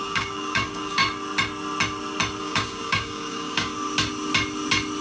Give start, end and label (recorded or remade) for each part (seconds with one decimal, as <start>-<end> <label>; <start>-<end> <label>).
0.0-1.0 remade; 1.0-2.4 recorded; 2.4-3.7 remade; 3.7-5.0 recorded